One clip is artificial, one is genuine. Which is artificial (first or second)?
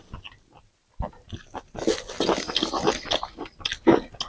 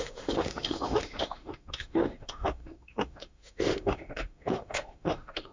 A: second